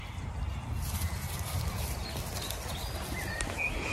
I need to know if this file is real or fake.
real